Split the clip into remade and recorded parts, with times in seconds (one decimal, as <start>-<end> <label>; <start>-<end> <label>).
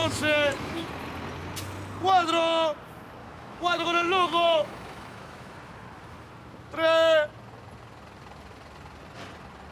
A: 0.0-0.9 remade; 0.9-3.2 recorded; 3.2-5.5 remade; 5.5-9.7 recorded